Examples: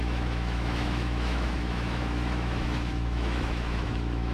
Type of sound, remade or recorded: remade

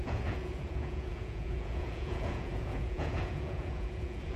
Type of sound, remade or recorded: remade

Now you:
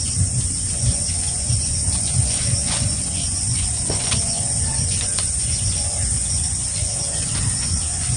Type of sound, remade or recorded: remade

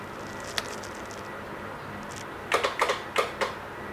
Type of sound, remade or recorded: recorded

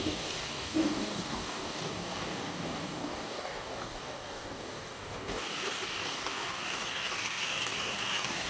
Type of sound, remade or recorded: remade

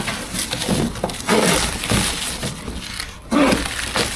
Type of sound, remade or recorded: recorded